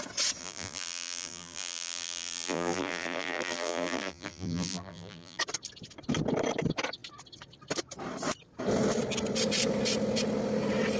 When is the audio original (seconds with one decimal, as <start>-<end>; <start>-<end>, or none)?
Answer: 0.0-0.4; 5.4-11.0